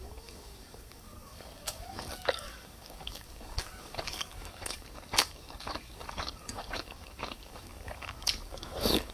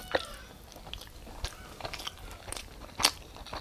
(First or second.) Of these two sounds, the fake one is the first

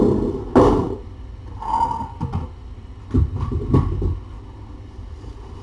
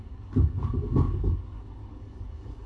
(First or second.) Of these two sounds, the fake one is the second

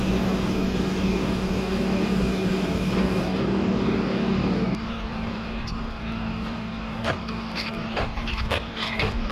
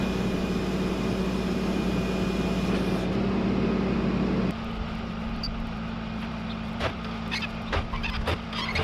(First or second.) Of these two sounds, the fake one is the first